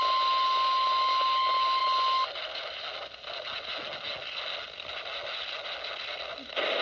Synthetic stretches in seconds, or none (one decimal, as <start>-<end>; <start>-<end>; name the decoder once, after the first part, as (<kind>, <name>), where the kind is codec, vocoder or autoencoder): none